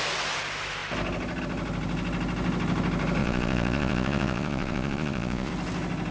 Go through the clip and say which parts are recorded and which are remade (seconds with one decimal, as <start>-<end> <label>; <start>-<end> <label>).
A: 0.0-3.2 recorded; 3.2-5.5 remade; 5.5-6.1 recorded